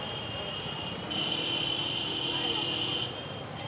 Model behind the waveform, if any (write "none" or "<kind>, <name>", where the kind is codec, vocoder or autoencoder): vocoder, BigVGAN v2